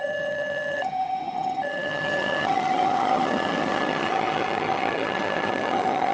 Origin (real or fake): fake